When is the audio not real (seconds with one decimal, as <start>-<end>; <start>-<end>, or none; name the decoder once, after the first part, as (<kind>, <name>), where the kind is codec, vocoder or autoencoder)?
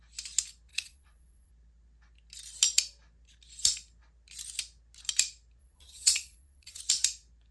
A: 0.7-1.5 (vocoder, Vocos); 5.6-6.8